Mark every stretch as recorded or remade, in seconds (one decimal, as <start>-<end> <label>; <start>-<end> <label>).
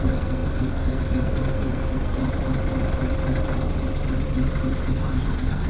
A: 0.0-2.2 remade; 2.2-4.8 recorded; 4.8-5.7 remade